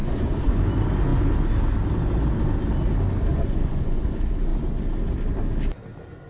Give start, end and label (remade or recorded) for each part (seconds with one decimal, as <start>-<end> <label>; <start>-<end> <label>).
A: 0.0-0.6 remade; 0.6-3.3 recorded; 3.3-4.1 remade; 4.1-6.3 recorded